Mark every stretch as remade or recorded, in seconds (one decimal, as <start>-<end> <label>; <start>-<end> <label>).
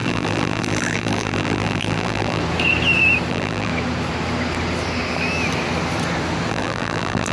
0.0-2.4 remade; 2.4-3.3 recorded; 3.3-3.7 remade; 3.7-6.5 recorded; 6.5-7.3 remade